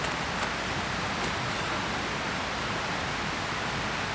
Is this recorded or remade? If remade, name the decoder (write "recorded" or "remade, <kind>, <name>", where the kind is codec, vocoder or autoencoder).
recorded